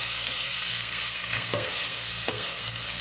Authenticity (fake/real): fake